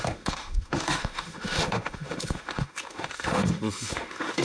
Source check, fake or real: fake